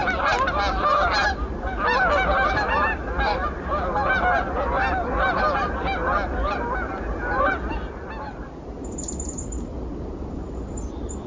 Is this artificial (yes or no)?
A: no